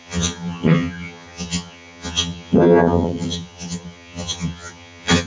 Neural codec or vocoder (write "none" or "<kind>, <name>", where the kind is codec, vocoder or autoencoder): vocoder, HiFi-GAN